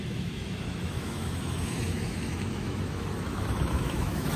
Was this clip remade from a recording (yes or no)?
yes